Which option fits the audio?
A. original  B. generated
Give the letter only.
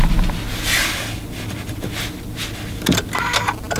A